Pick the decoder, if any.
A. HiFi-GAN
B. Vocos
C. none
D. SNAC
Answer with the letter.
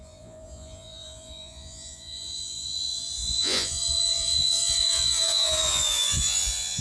B